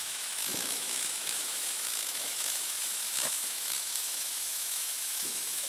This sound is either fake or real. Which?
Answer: fake